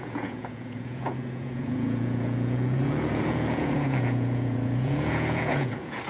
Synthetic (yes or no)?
yes